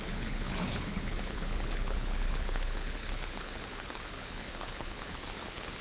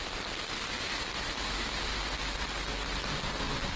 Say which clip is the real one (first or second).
second